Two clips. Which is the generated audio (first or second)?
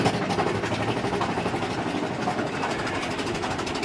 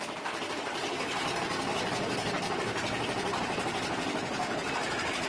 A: second